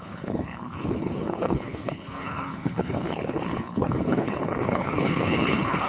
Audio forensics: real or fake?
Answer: fake